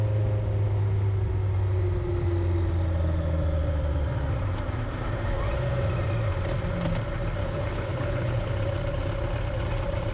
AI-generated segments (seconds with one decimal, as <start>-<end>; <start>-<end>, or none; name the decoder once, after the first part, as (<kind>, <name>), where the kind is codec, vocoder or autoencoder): 7.4-8.5 (codec, HILCodec)